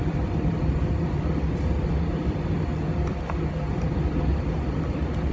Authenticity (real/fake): real